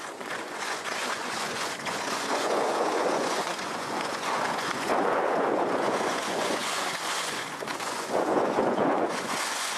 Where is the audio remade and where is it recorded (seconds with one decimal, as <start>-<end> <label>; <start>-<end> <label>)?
0.0-9.8 remade